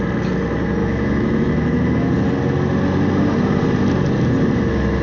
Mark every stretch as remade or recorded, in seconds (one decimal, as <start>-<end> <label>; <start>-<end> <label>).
0.0-0.8 recorded; 0.8-2.1 remade; 2.1-5.0 recorded